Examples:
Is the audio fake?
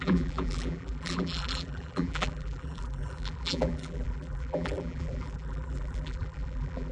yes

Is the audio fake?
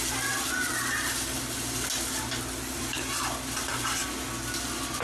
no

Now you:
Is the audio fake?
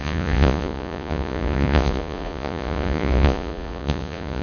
yes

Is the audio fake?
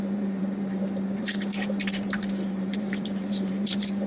yes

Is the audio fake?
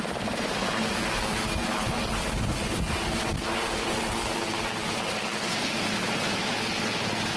no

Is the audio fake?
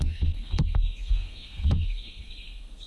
yes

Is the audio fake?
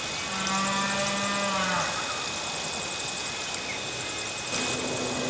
no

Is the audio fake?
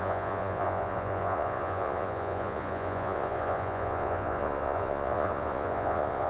yes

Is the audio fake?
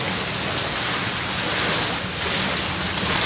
no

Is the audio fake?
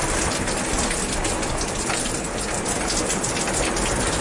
no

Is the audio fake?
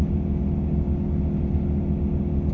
no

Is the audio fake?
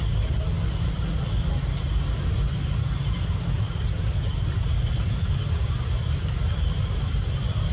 no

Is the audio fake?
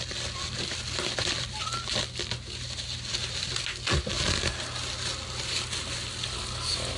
no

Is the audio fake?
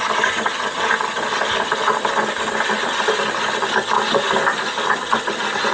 no